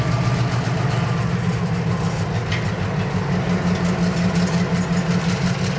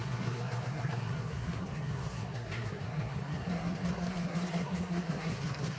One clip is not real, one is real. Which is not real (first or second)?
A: second